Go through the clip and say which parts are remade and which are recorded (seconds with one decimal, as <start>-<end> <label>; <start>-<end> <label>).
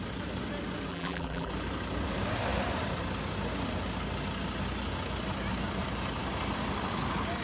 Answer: 0.0-0.9 recorded; 0.9-1.5 remade; 1.5-7.4 recorded